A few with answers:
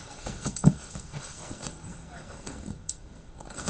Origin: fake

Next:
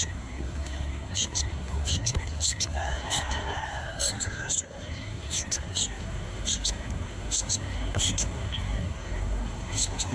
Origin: fake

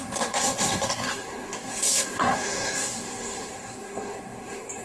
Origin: fake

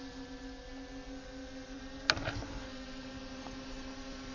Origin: real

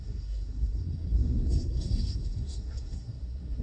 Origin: fake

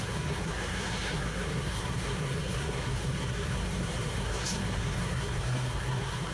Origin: fake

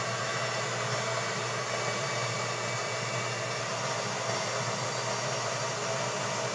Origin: real